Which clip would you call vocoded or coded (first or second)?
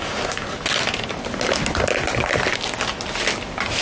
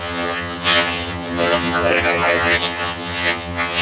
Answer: second